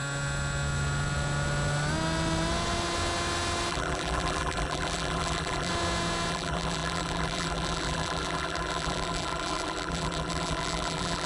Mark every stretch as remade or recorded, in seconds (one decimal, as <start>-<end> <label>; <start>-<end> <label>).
0.0-3.7 recorded; 3.7-5.7 remade; 5.7-6.3 recorded; 6.3-11.3 remade